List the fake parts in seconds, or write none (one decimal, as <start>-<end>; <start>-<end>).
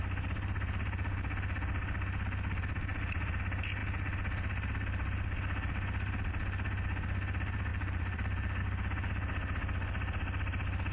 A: 2.9-3.4; 7.7-8.6